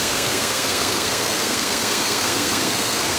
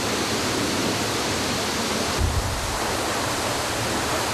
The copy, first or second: first